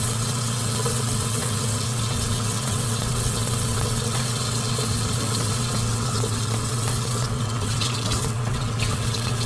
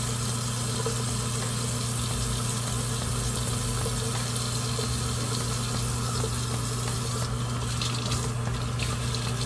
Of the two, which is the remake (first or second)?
first